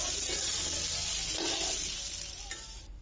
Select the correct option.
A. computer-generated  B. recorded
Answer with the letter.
B